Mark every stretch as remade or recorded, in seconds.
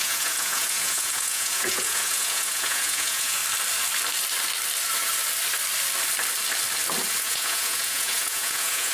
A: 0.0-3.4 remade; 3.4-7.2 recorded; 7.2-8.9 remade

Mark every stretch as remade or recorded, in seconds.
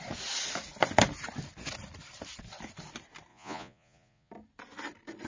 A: 0.0-3.3 recorded; 3.3-4.3 remade; 4.3-5.3 recorded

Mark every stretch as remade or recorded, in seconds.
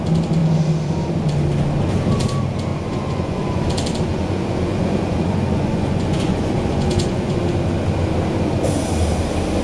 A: 0.0-2.7 recorded; 2.7-3.6 remade; 3.6-4.1 recorded; 4.1-7.4 remade; 7.4-9.6 recorded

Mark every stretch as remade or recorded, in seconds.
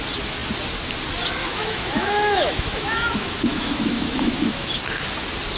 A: 0.0-1.4 recorded; 1.4-4.8 remade; 4.8-5.6 recorded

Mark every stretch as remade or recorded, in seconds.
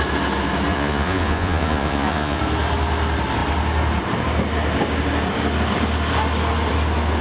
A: 0.0-0.7 recorded; 0.7-2.4 remade; 2.4-7.2 recorded